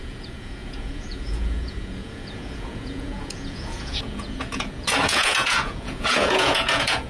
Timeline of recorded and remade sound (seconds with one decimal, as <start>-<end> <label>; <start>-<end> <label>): 0.0-7.1 remade